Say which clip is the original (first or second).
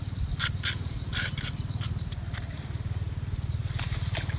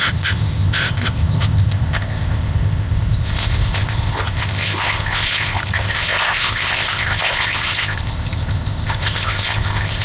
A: first